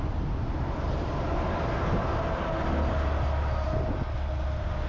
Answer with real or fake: real